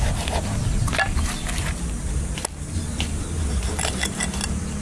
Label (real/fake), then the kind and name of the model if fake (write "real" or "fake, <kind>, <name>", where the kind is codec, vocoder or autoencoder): real